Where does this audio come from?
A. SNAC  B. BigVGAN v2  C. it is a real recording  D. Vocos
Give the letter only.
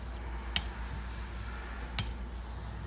C